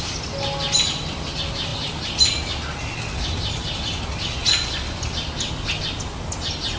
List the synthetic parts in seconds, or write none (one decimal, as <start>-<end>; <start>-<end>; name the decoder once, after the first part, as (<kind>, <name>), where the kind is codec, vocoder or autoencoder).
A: none